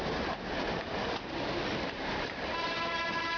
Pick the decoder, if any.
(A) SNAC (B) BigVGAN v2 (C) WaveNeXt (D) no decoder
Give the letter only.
B